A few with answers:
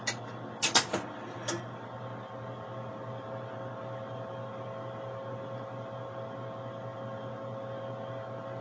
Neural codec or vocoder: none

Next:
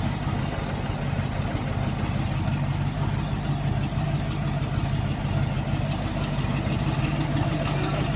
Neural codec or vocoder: none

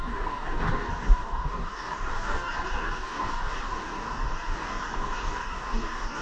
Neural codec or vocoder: codec, DAC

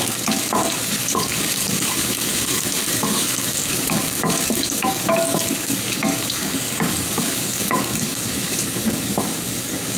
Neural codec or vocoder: codec, DAC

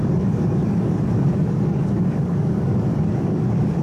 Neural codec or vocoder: codec, DAC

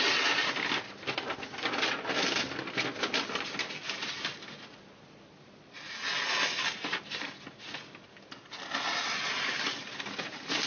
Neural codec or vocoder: none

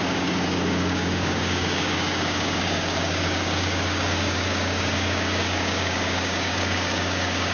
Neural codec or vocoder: codec, DAC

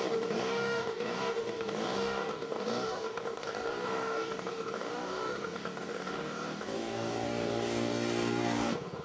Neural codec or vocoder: codec, DAC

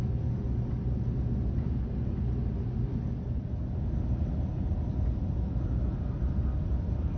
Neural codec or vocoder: none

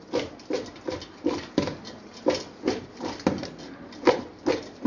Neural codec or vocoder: none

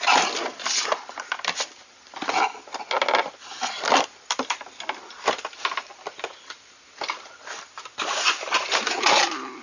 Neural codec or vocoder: none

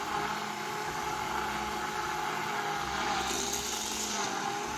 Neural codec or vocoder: none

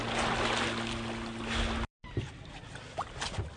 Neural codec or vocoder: none